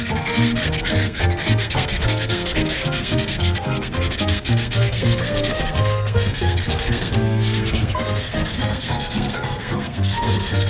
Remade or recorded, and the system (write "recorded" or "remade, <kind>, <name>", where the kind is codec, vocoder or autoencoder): remade, codec, SNAC